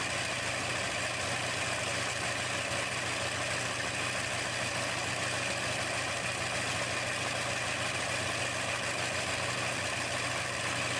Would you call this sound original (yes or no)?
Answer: yes